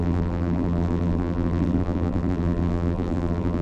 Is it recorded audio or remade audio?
remade